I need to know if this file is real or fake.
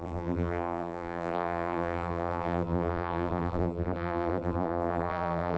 fake